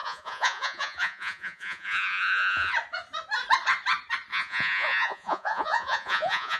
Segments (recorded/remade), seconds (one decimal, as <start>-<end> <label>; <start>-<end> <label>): 0.0-2.7 remade; 2.7-4.3 recorded; 4.3-6.6 remade